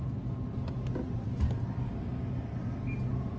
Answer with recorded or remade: recorded